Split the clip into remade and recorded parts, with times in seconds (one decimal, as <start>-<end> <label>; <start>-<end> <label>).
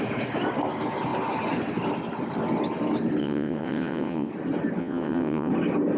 0.0-3.2 recorded; 3.2-4.3 remade; 4.3-4.8 recorded; 4.8-5.5 remade; 5.5-6.0 recorded